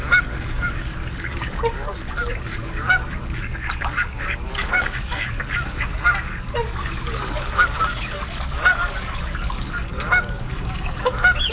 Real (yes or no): no